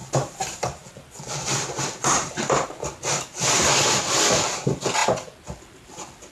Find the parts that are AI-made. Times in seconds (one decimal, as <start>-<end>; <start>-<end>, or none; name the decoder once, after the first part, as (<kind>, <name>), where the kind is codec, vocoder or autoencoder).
0.0-3.7 (vocoder, BigVGAN v2)

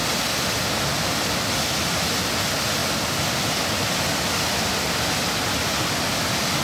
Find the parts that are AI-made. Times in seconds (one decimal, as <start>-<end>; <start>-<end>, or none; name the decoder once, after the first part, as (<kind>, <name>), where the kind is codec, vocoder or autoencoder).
none

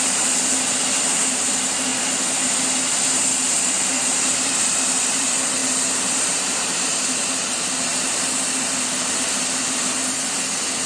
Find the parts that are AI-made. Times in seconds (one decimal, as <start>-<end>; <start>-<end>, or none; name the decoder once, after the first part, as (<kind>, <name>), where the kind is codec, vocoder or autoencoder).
0.0-1.9 (vocoder, BigVGAN v2); 2.9-10.9

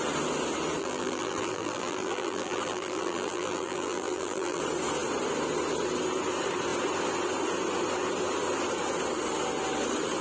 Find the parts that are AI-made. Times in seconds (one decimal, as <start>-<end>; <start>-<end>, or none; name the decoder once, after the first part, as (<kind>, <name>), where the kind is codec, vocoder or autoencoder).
0.8-4.6 (vocoder, BigVGAN v2)

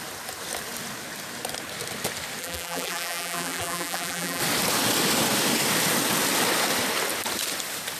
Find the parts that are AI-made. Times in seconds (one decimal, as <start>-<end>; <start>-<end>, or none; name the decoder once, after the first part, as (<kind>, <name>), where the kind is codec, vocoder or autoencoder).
2.4-4.4 (vocoder, BigVGAN v2)

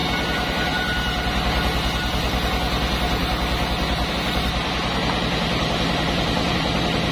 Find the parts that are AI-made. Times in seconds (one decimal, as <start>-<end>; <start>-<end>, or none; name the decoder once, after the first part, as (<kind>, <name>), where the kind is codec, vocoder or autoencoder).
none